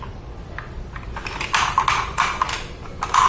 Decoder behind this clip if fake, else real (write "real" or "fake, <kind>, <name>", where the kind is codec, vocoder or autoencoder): real